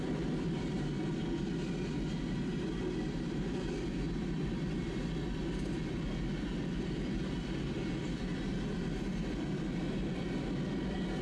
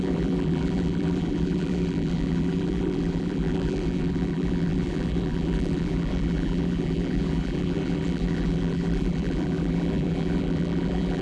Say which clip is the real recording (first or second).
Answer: first